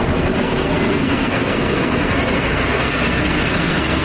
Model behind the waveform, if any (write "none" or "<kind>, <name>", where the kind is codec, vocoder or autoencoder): codec, SNAC